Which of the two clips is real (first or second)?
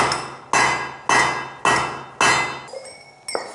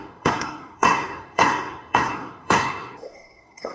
first